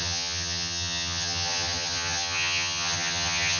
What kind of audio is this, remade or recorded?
remade